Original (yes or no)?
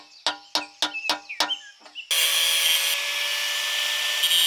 yes